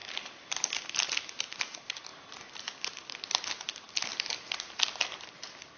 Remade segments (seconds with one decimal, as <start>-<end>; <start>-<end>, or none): 2.1-2.6; 4.1-4.6